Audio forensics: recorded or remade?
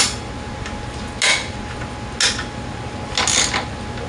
recorded